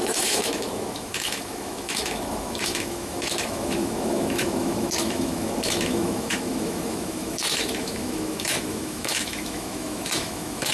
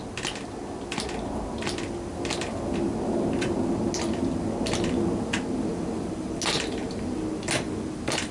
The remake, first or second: first